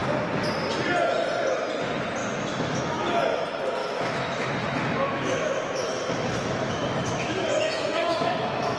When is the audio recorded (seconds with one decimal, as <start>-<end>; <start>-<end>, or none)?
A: 0.0-2.2; 3.4-3.8